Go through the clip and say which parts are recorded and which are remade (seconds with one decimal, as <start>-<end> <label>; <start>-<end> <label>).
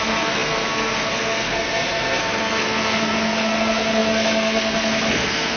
0.0-5.6 remade